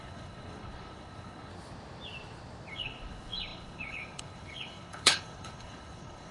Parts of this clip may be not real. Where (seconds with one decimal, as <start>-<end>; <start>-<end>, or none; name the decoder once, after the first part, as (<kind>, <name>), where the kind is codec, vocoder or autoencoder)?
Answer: 0.0-1.5 (codec, HILCodec); 2.7-6.3